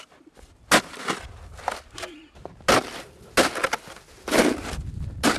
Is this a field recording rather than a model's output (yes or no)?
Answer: yes